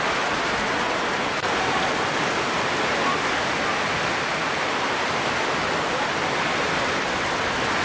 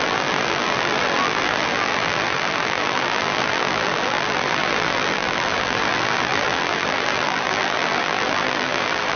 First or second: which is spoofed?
second